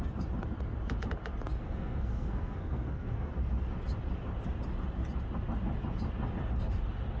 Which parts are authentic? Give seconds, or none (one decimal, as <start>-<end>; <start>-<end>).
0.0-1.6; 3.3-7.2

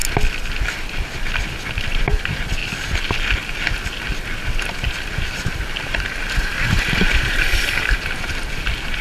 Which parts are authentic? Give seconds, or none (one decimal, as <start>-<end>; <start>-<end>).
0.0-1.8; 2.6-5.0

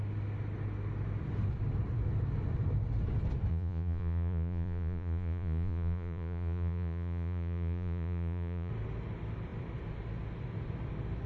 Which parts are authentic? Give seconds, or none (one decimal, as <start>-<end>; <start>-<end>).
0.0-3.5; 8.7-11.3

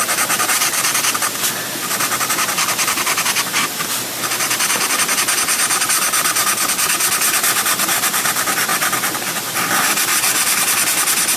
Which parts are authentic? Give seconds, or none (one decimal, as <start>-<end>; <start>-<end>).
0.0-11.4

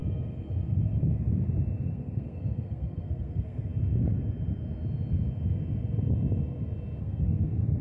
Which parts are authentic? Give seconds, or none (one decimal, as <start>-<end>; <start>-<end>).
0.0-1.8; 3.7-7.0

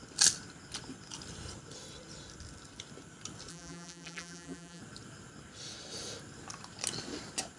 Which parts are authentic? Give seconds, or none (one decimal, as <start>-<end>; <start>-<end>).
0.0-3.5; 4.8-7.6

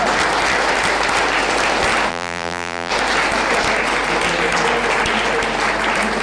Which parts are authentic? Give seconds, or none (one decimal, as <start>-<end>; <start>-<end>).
0.0-2.1; 2.9-6.2